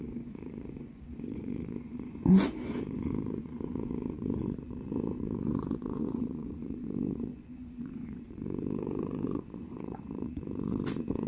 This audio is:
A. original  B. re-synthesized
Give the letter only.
B